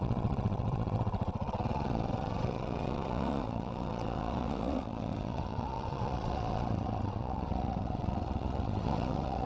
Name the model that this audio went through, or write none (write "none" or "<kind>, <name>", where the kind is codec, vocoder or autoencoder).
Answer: vocoder, WaveNeXt